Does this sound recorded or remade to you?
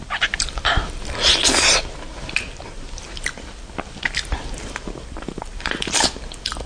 recorded